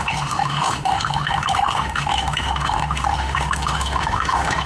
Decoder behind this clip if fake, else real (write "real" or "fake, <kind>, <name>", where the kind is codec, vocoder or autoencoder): fake, autoencoder, DAC-VAE